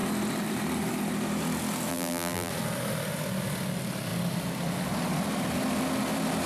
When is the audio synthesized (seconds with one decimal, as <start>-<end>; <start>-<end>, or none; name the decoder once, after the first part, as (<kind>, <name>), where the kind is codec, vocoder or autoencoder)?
1.9-2.5 (vocoder, BigVGAN v2)